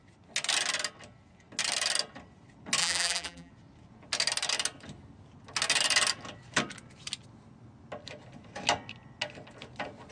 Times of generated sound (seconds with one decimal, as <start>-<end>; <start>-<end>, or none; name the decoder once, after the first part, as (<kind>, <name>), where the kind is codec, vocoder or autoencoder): 2.8-3.5 (vocoder, BigVGAN v2)